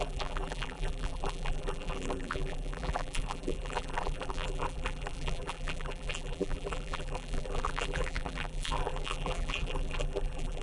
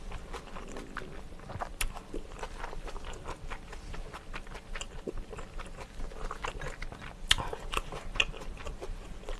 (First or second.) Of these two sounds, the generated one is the first